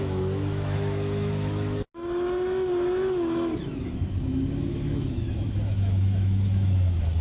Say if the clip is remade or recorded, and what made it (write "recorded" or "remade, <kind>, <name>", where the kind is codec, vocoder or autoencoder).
remade, autoencoder, DAC-VAE